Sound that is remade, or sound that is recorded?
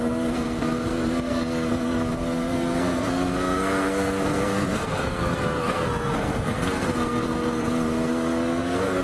remade